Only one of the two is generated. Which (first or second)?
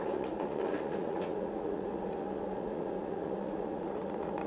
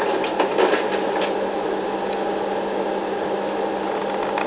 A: first